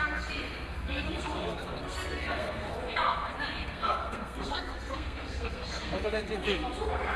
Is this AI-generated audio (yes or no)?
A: yes